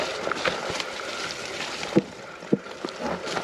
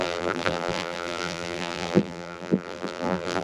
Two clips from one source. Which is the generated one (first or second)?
second